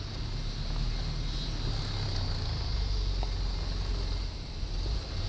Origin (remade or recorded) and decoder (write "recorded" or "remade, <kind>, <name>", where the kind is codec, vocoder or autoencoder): recorded